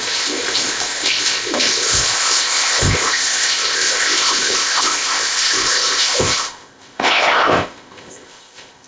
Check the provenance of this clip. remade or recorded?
remade